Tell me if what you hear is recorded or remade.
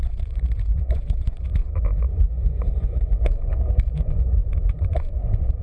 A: remade